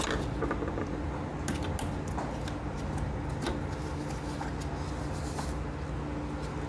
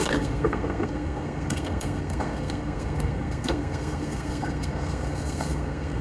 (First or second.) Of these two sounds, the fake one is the second